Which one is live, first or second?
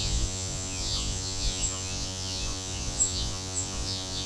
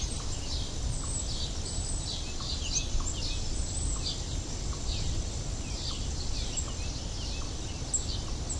second